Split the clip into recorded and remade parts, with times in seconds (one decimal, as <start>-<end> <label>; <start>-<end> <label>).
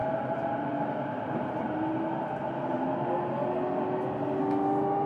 0.0-3.1 remade; 3.1-5.1 recorded